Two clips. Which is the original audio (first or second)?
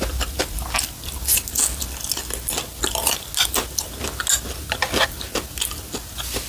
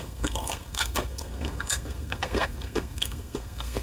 first